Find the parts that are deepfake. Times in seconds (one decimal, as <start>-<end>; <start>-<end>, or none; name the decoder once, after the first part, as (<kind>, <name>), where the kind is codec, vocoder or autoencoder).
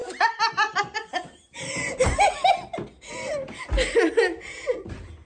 none